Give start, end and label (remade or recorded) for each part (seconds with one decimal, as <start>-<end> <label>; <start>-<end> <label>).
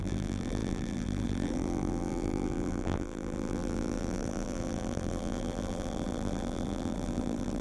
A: 0.0-7.6 remade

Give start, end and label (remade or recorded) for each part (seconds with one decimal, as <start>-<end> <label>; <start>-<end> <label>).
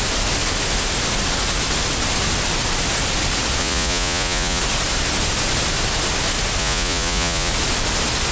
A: 0.0-3.6 recorded; 3.6-4.6 remade; 4.6-6.6 recorded; 6.6-7.5 remade; 7.5-8.3 recorded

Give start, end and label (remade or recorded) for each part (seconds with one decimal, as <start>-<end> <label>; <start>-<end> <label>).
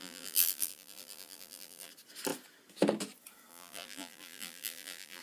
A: 0.0-1.9 remade; 1.9-3.5 recorded; 3.5-5.2 remade